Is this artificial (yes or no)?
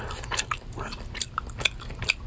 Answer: no